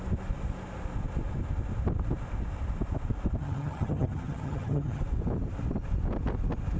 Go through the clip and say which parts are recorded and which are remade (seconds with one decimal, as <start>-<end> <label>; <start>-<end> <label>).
0.0-3.4 recorded; 3.4-5.0 remade; 5.0-6.8 recorded